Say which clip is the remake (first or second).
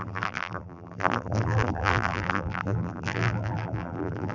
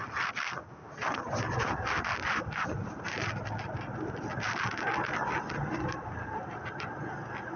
first